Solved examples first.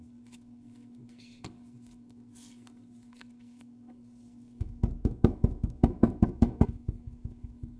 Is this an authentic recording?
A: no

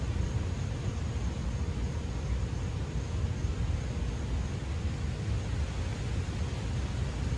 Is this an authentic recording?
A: yes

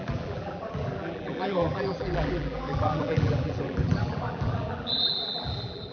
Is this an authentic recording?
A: no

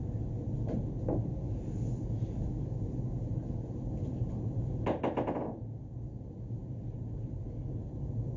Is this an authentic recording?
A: yes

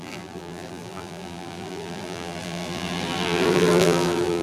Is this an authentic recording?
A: no